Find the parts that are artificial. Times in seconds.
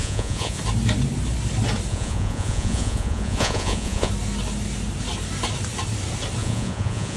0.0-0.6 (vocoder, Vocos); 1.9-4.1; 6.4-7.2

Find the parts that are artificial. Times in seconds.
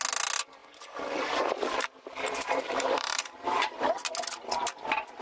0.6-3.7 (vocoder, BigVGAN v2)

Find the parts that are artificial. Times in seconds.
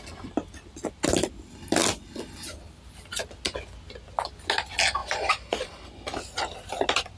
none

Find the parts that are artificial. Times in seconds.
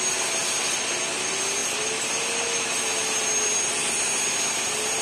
none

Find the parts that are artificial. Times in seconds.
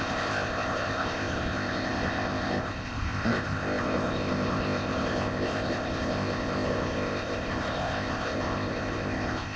0.0-9.6 (codec, ZipCodec)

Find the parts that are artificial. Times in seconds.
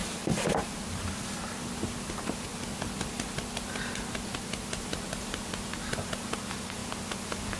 none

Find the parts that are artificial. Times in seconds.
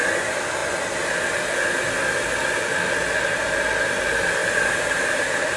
4.4-5.6 (vocoder, BigVGAN v2)